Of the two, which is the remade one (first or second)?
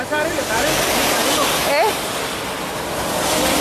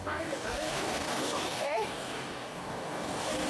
second